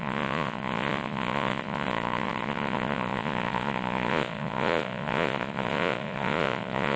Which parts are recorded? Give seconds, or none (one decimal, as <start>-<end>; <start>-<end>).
none

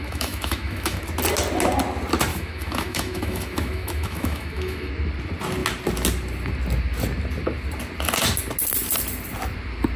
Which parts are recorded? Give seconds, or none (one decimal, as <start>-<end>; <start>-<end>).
1.0-2.3; 4.9-10.0

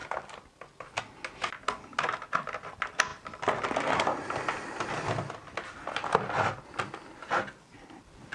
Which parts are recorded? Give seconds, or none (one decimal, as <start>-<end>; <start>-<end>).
0.0-8.3

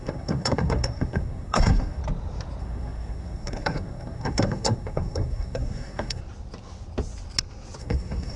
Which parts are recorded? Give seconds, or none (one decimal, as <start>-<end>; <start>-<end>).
2.0-2.6; 6.2-7.8

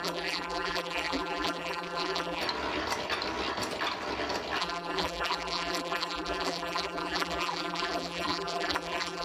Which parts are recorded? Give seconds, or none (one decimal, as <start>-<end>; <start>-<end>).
2.4-4.6